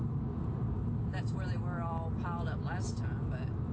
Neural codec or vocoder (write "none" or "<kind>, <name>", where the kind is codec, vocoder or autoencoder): none